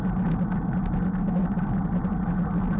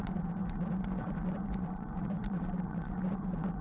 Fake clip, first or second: second